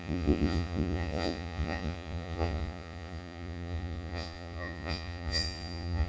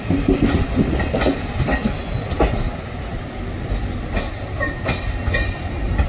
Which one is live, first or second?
second